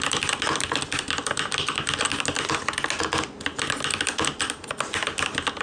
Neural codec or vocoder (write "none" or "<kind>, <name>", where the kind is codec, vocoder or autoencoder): none